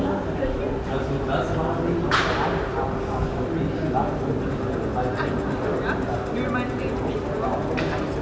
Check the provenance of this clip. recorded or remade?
recorded